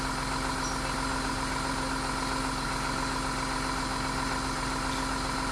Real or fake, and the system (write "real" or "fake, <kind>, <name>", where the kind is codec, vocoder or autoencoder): real